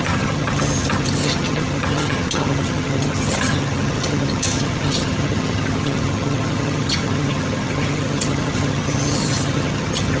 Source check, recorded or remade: remade